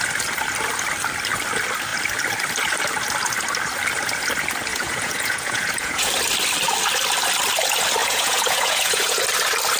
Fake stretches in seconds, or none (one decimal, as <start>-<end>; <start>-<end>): 4.7-6.1; 8.0-9.2